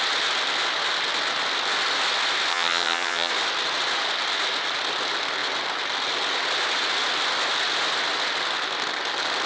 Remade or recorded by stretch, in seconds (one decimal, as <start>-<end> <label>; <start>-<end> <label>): 0.0-2.5 recorded; 2.5-3.3 remade; 3.3-9.5 recorded